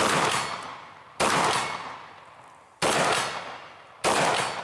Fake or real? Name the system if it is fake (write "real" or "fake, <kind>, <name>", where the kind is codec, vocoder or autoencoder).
real